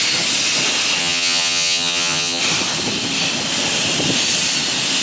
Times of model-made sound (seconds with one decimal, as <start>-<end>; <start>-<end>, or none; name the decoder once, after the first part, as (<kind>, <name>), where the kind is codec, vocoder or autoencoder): 1.0-2.4 (vocoder, HiFi-GAN)

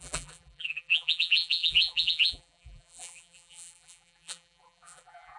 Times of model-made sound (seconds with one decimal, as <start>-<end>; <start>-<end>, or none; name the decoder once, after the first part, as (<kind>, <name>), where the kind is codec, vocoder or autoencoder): 0.0-5.4 (vocoder, BigVGAN v2)

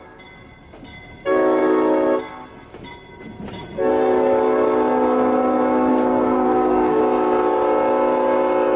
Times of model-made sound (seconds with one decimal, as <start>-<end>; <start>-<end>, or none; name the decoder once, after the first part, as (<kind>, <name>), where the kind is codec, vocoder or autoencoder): 5.9-7.0 (codec, SNAC)

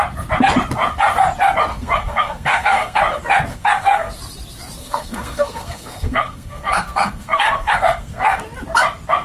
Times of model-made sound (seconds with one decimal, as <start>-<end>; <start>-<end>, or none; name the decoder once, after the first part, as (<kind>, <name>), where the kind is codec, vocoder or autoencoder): 1.7-3.0 (codec, SNAC); 3.5-4.1; 4.8-8.4